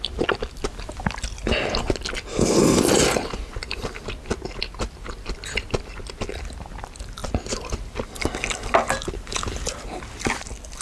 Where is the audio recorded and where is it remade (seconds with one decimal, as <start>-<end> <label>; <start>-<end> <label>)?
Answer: 0.0-10.8 recorded

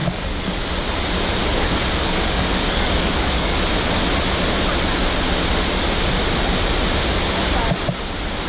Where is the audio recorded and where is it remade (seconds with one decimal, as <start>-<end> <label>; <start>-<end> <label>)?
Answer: 0.0-0.7 remade; 0.7-1.4 recorded; 1.4-3.6 remade; 3.6-8.5 recorded

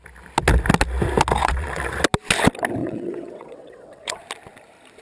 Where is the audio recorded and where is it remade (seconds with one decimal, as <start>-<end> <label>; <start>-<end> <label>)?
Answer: 0.0-1.4 recorded; 1.4-1.9 remade; 1.9-2.8 recorded; 2.8-4.2 remade; 4.2-5.0 recorded

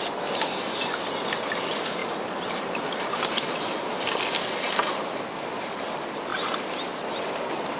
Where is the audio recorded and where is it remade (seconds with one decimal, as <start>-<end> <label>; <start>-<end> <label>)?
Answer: 0.0-2.0 recorded; 2.0-3.9 remade; 3.9-7.8 recorded

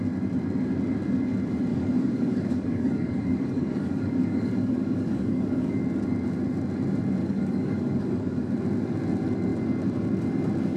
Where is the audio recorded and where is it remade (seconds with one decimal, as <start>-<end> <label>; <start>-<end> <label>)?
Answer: 0.0-1.7 recorded; 1.7-5.8 remade; 5.8-7.2 recorded; 7.2-8.5 remade; 8.5-10.8 recorded

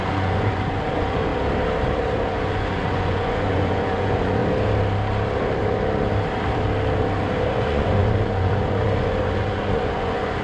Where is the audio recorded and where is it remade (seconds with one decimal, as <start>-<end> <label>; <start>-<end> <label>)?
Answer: 0.0-1.3 remade; 1.3-2.3 recorded; 2.3-4.4 remade; 4.4-7.5 recorded; 7.5-10.4 remade

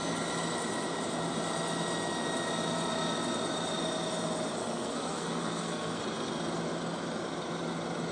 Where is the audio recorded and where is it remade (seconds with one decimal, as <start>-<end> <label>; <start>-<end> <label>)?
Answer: 0.0-4.6 recorded; 4.6-6.0 remade; 6.0-8.1 recorded